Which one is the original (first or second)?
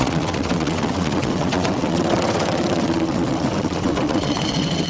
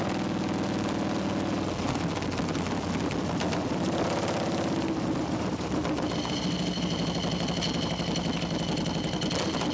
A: second